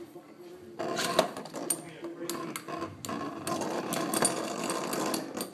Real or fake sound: real